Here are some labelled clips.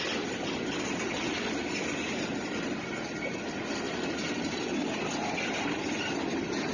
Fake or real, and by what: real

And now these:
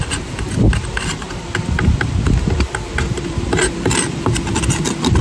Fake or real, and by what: real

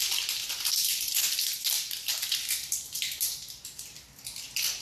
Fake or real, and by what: real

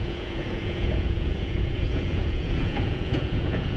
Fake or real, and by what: fake, vocoder, Vocos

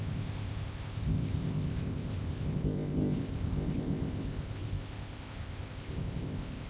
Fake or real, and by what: fake, codec, ZipCodec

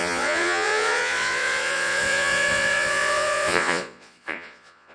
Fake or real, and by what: fake, vocoder, Vocos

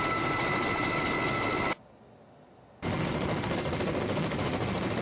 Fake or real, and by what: real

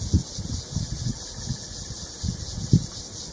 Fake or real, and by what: real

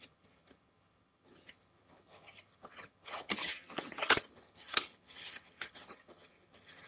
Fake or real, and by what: fake, vocoder, HiFi-GAN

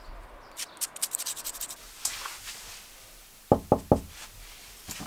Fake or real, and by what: real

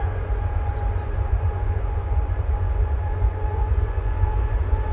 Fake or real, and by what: fake, vocoder, Vocos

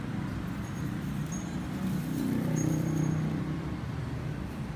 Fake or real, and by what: fake, vocoder, BigVGAN v2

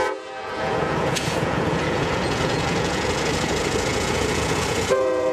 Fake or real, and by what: fake, vocoder, Vocos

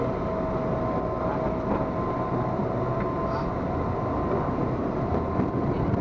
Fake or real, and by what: real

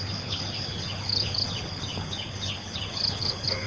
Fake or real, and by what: fake, codec, HILCodec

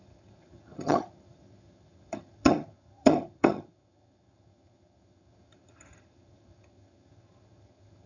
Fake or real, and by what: fake, vocoder, HiFi-GAN